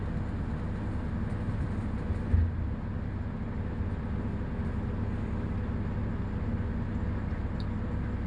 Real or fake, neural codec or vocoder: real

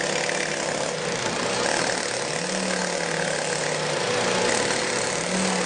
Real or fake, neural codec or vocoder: real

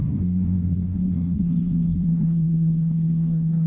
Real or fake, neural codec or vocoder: fake, codec, SNAC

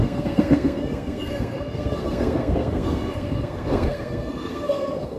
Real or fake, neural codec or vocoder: fake, codec, SNAC